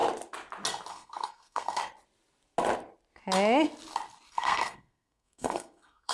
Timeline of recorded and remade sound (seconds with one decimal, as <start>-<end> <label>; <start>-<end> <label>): 0.0-0.9 recorded; 0.9-1.8 remade; 1.8-4.3 recorded; 4.3-6.1 remade

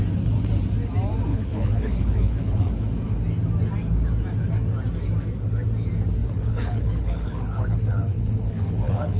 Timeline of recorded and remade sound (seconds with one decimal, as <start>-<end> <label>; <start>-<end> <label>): 0.0-1.3 recorded; 1.3-2.7 remade; 2.7-6.2 recorded; 6.2-9.2 remade

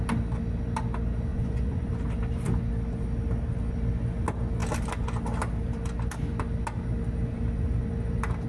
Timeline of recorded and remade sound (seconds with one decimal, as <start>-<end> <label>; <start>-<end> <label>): 0.0-1.3 recorded; 1.3-1.9 remade; 1.9-8.5 recorded

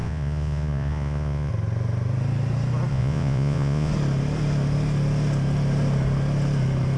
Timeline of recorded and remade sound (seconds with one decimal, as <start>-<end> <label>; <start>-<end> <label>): 0.0-1.5 remade; 1.5-2.9 recorded; 2.9-3.9 remade; 3.9-7.0 recorded

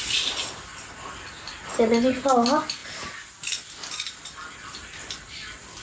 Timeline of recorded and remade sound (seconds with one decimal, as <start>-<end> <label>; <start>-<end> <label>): 0.0-5.8 recorded

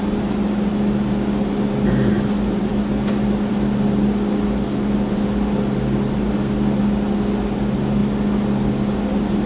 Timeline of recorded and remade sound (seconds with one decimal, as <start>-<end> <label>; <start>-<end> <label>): 0.0-9.5 recorded

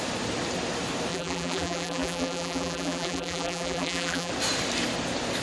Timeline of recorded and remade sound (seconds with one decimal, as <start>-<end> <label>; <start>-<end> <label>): 0.0-1.1 recorded; 1.1-4.3 remade; 4.3-5.4 recorded